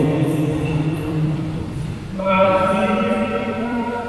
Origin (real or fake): fake